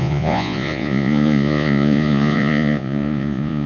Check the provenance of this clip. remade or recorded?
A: remade